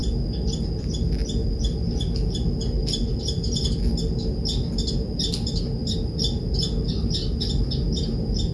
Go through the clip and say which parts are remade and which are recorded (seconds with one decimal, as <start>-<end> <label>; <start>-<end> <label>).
0.0-8.5 recorded